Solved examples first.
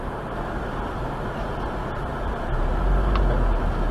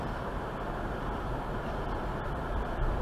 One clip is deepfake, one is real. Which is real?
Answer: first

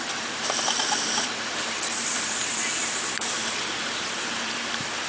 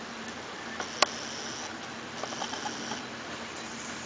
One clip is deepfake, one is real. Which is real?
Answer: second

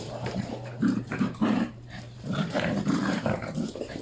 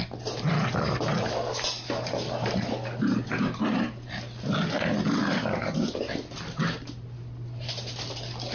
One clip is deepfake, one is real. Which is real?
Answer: second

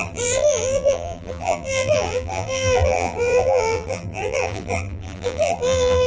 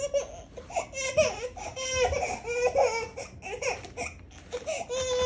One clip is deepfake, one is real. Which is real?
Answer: second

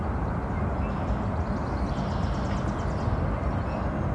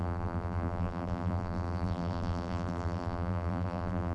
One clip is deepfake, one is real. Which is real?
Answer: first